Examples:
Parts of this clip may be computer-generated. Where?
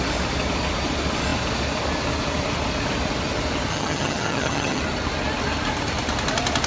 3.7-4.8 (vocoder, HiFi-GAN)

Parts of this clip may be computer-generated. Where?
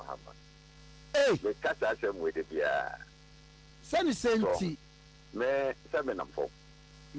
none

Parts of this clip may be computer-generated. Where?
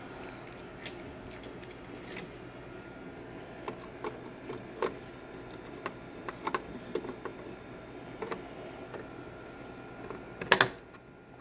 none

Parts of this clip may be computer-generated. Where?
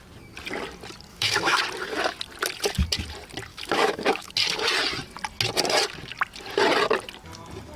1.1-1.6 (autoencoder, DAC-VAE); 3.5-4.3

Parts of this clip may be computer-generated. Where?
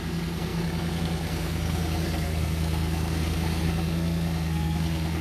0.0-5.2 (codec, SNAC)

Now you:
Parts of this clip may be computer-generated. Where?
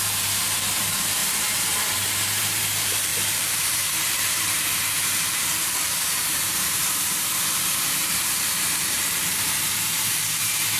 0.0-10.8 (vocoder, BigVGAN v2)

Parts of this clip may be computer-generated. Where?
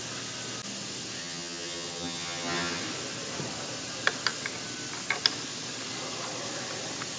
1.2-2.8 (vocoder, HiFi-GAN)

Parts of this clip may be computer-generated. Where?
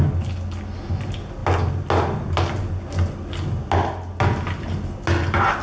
none